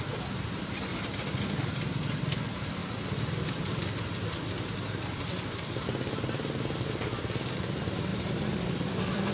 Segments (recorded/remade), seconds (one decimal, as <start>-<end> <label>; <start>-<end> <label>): 0.0-2.8 remade; 2.8-6.9 recorded; 6.9-9.3 remade